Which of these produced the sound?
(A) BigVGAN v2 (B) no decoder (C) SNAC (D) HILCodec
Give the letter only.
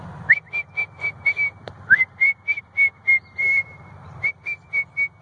A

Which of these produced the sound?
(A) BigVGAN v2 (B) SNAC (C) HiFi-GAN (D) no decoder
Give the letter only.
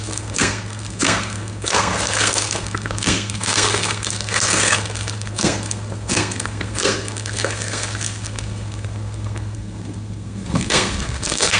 B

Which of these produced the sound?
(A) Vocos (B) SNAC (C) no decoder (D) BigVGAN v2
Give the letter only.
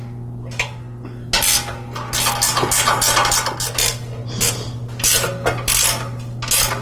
C